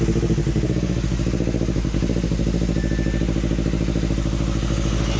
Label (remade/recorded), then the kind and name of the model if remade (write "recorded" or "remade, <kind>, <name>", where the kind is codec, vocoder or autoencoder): recorded